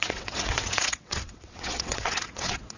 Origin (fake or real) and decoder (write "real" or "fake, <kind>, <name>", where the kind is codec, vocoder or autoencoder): fake, vocoder, WaveNeXt